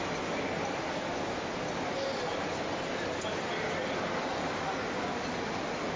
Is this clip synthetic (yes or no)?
no